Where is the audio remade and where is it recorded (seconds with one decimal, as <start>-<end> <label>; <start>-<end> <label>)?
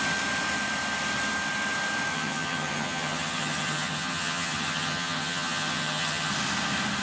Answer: 0.0-2.1 recorded; 2.1-6.3 remade; 6.3-7.0 recorded